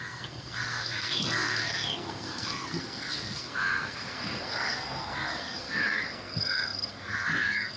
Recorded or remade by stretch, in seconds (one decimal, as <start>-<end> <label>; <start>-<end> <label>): 0.0-7.8 remade